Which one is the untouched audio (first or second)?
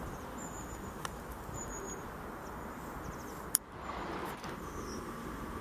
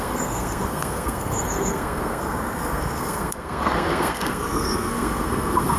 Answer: first